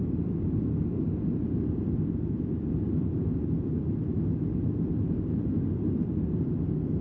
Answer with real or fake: real